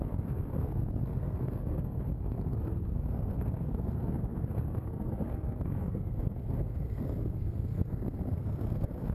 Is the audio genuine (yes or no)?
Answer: no